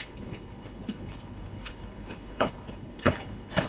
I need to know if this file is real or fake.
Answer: fake